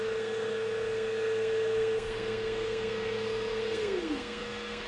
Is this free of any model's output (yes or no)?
no